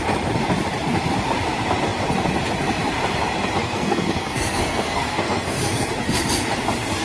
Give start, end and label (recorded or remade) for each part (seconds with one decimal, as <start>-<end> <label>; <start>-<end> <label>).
0.0-3.6 recorded; 3.6-5.9 remade; 5.9-7.0 recorded